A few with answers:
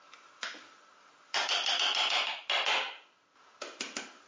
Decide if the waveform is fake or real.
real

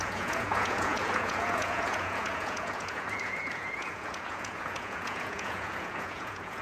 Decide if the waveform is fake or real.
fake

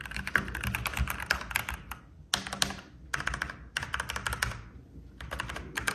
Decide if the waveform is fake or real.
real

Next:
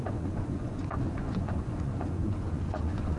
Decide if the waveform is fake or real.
fake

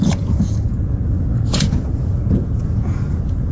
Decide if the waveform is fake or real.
fake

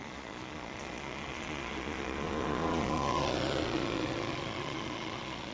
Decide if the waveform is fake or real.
fake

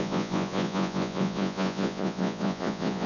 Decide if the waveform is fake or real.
fake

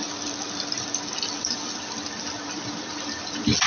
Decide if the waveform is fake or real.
real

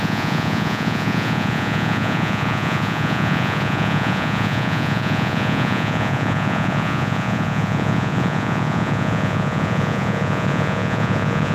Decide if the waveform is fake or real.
fake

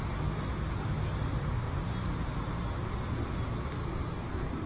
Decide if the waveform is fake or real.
real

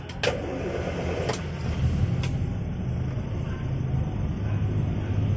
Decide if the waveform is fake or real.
real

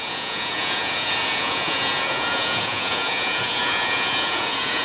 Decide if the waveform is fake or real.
fake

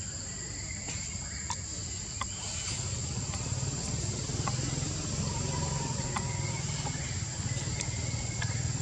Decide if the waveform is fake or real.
real